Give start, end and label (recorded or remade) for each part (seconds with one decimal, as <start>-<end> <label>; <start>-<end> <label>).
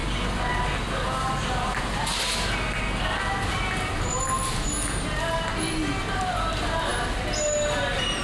0.0-8.2 recorded